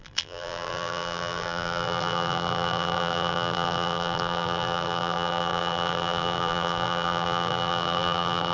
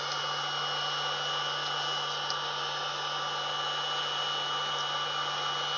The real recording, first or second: second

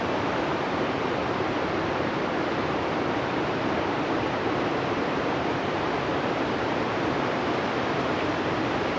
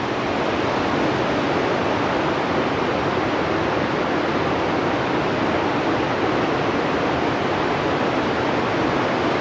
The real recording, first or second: second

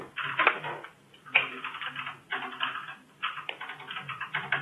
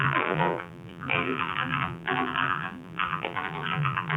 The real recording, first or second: first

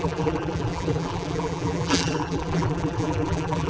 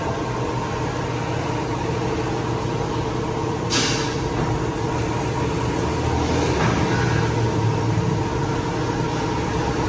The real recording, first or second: second